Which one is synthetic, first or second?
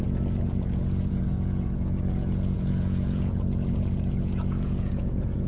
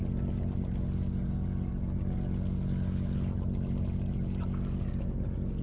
first